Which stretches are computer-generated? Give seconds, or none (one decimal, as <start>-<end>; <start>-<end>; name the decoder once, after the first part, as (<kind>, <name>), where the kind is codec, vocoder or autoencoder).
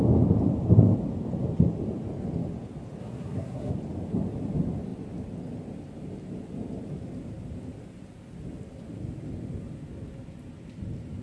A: 3.0-3.7 (codec, SNAC)